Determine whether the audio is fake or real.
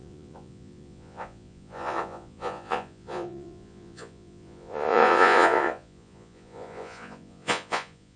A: fake